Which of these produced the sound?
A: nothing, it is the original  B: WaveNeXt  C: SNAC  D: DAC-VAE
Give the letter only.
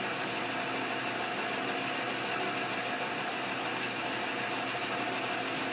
A